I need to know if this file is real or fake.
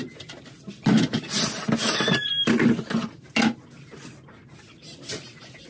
real